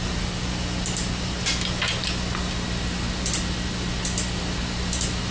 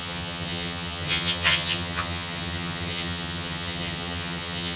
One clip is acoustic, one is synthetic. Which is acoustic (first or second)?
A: first